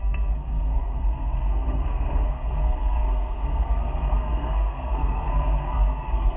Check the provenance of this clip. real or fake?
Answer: fake